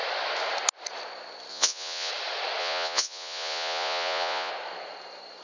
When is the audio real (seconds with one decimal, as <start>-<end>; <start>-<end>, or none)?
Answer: 0.0-1.5; 2.1-2.6; 4.5-5.4